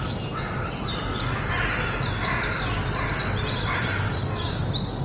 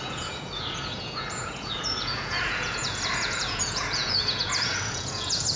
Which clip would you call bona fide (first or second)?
first